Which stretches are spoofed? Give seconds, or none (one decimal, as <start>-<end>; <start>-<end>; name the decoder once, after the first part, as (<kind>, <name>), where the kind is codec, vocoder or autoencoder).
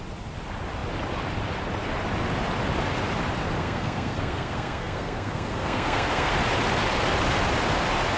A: 3.6-6.3 (codec, SNAC)